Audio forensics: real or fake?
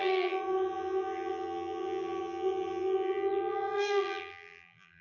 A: fake